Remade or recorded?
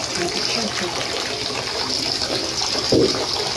recorded